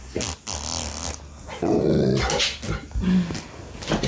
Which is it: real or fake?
real